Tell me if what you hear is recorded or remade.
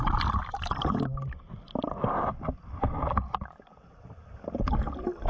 recorded